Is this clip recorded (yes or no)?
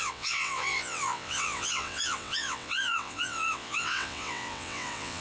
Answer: no